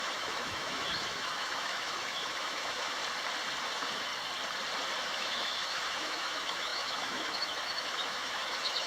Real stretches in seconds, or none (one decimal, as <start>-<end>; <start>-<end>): 3.0-3.6; 4.1-5.0